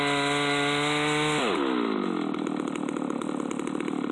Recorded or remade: recorded